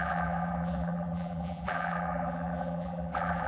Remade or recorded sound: remade